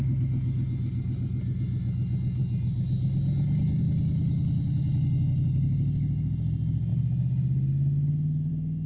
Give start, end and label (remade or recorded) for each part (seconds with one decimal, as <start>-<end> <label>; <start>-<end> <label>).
0.0-8.9 recorded